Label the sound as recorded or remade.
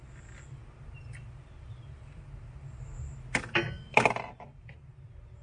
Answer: recorded